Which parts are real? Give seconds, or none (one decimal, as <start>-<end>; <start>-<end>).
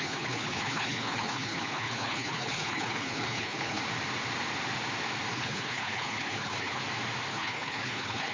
3.8-5.3; 6.8-7.3